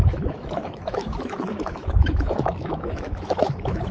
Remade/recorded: remade